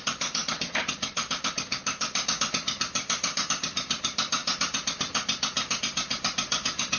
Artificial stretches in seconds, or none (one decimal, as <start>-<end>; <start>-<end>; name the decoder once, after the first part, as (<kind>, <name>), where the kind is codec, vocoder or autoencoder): 0.0-7.0 (vocoder, BigVGAN v2)